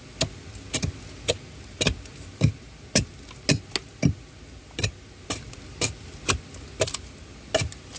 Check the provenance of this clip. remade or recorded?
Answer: recorded